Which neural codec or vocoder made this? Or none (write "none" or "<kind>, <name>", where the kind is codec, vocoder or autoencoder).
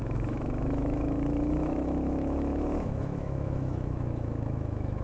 autoencoder, DAC-VAE